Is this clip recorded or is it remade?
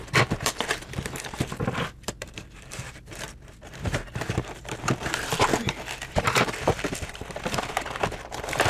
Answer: remade